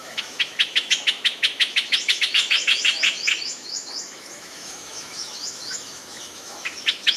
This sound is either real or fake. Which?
fake